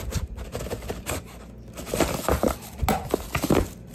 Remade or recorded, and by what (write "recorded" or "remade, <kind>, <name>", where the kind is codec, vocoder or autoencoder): recorded